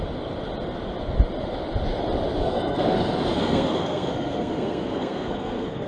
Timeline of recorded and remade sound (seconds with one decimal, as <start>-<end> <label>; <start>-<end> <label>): 0.0-2.4 recorded; 2.4-5.9 remade